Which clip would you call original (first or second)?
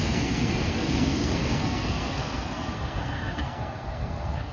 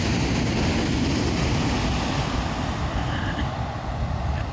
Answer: second